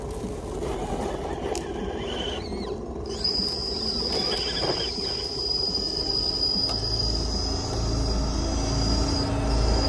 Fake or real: real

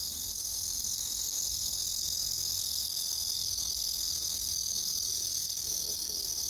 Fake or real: fake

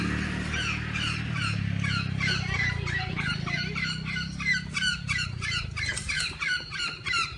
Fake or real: fake